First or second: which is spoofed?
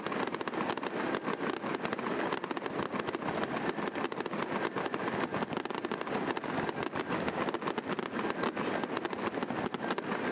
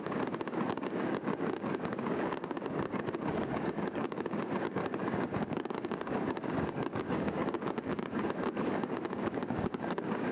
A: second